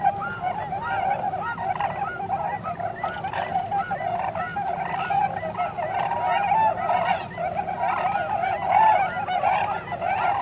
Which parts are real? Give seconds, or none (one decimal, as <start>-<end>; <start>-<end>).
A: 0.0-10.4